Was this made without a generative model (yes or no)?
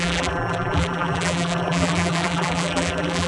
no